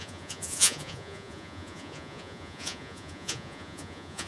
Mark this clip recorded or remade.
remade